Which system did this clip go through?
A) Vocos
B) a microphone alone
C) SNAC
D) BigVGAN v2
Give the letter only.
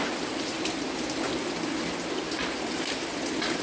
B